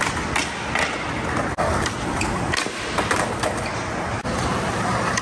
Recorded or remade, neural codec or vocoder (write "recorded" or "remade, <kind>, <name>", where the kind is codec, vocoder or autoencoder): recorded